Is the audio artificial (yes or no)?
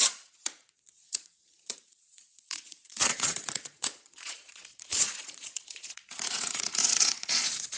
yes